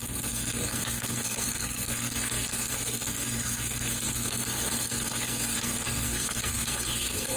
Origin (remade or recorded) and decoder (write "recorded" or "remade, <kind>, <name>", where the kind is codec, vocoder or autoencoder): remade, codec, SNAC